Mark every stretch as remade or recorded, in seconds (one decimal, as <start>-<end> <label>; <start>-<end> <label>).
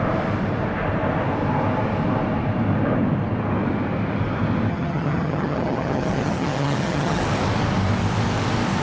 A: 0.0-4.7 recorded; 4.7-7.2 remade; 7.2-8.8 recorded